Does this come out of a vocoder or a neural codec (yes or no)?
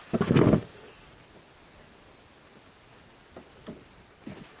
no